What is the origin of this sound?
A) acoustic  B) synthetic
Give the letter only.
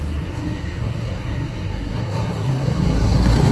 B